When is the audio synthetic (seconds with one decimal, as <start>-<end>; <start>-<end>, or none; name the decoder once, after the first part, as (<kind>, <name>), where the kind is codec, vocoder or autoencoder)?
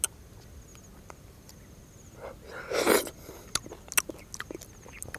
none